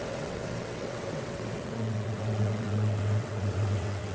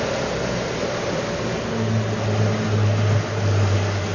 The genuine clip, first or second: second